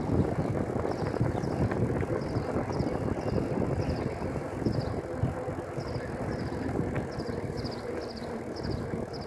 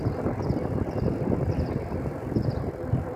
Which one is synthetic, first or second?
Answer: second